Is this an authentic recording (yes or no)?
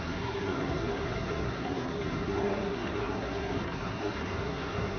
no